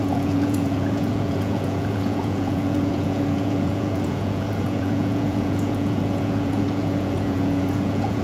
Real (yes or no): no